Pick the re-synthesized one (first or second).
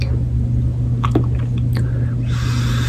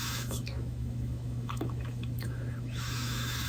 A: second